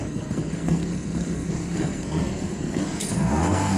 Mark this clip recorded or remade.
remade